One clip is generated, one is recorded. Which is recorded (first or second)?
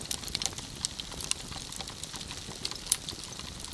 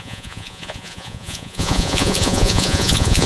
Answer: first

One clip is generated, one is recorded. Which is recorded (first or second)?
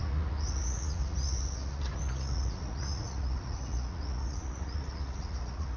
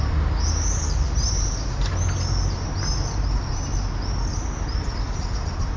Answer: second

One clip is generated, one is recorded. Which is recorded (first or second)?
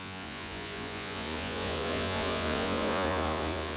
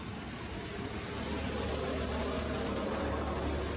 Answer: second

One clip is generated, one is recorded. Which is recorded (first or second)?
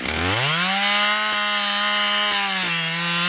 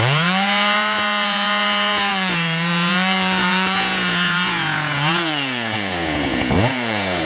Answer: first